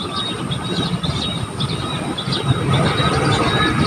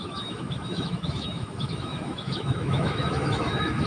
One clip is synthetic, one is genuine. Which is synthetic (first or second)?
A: second